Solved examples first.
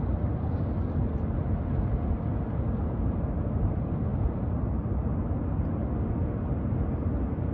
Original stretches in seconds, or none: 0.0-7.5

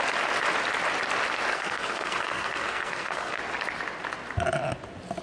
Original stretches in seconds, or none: 0.0-1.5; 3.4-5.2

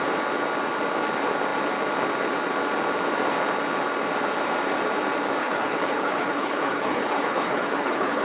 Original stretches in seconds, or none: 0.0-5.4

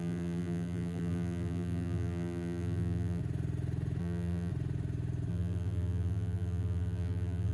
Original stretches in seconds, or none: 3.2-4.0; 4.5-5.3

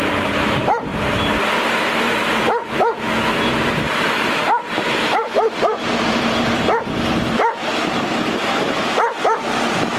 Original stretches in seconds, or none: none

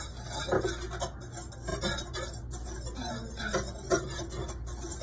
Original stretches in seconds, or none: 0.0-5.0

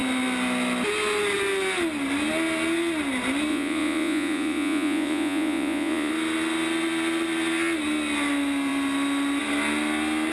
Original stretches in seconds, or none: 0.0-3.5; 6.1-10.3

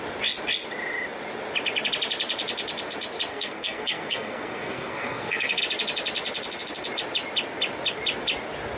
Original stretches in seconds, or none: 0.0-3.3; 5.6-8.8